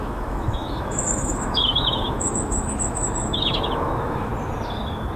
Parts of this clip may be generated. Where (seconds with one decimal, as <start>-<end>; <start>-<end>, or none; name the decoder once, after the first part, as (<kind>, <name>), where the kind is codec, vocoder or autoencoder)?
0.0-4.3 (autoencoder, DAC-VAE)